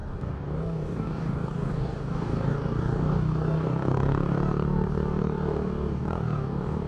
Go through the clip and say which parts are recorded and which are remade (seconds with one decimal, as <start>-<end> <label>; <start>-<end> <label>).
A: 0.0-6.9 remade